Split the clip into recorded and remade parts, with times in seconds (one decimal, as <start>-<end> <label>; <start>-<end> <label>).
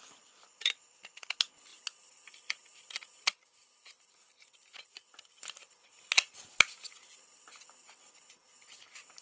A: 0.0-9.2 recorded